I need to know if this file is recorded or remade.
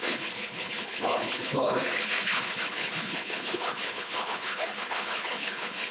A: remade